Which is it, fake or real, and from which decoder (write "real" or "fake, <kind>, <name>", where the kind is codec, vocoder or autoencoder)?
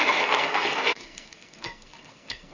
fake, codec, SNAC